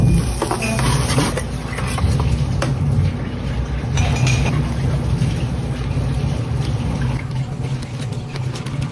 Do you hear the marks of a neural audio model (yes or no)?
no